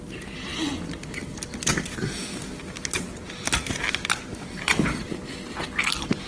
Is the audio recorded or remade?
recorded